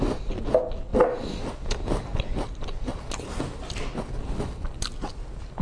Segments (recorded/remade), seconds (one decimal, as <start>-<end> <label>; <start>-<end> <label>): 0.0-5.6 recorded